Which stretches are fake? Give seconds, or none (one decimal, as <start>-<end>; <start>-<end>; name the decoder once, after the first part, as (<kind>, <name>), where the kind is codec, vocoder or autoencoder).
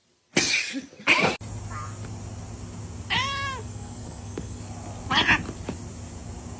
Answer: 3.6-4.6 (codec, SNAC)